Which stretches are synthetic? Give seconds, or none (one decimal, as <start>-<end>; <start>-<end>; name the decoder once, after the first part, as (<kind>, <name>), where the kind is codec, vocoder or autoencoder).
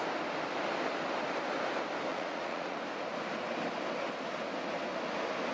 2.1-2.8 (vocoder, Vocos)